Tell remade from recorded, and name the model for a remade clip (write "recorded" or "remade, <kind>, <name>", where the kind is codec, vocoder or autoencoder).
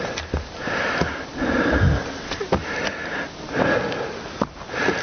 recorded